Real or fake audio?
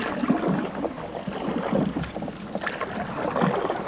real